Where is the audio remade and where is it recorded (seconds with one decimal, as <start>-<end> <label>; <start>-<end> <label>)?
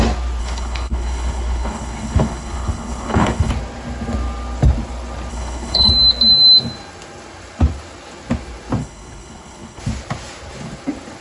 0.0-0.4 recorded; 0.4-3.5 remade; 3.5-5.3 recorded; 5.3-5.9 remade; 5.9-8.8 recorded; 8.8-9.8 remade; 9.8-11.2 recorded